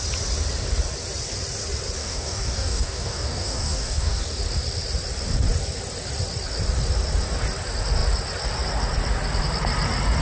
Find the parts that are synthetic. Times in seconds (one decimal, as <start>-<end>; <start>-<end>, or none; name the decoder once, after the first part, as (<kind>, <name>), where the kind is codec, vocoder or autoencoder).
2.0-4.2 (codec, DAC)